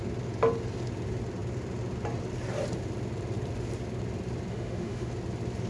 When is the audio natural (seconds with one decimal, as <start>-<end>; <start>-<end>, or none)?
0.0-4.5; 5.1-5.7